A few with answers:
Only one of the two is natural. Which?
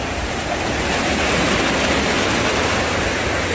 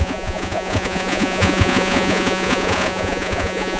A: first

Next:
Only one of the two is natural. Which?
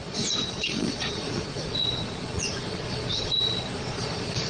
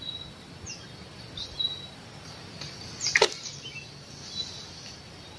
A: second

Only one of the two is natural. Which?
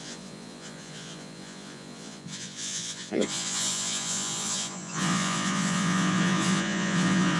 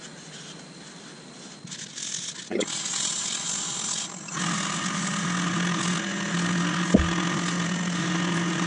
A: second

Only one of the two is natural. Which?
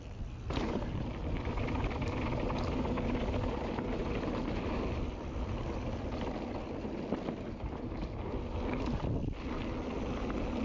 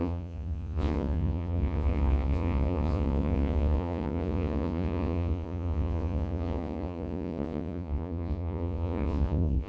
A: first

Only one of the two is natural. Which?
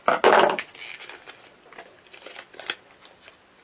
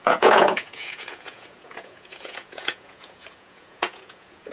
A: first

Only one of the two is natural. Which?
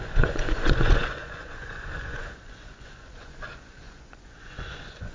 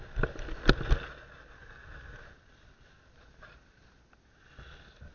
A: second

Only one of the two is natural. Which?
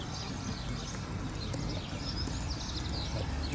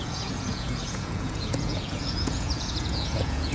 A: first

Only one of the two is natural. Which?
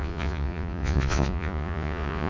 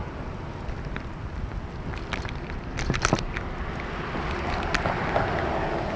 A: second